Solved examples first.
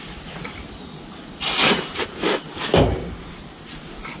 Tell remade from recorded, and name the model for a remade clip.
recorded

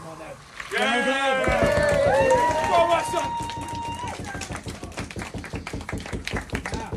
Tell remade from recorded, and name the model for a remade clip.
recorded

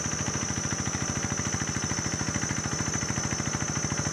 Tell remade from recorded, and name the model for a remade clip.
recorded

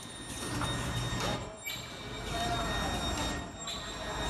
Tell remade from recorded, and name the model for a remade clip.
recorded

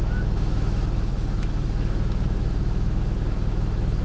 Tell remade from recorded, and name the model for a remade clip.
remade, autoencoder, DAC-VAE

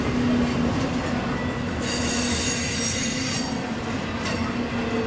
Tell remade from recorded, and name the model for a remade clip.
recorded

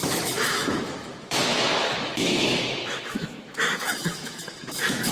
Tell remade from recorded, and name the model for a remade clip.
remade, autoencoder, DAC-VAE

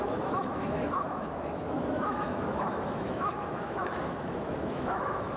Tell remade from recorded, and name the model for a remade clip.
remade, autoencoder, DAC-VAE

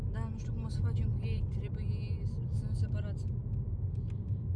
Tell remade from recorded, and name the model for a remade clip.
recorded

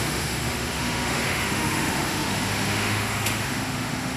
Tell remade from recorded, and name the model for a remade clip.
remade, autoencoder, DAC-VAE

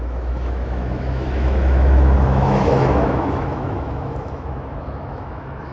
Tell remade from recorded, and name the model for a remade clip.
remade, autoencoder, DAC-VAE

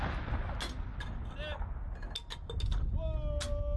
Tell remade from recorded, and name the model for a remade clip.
recorded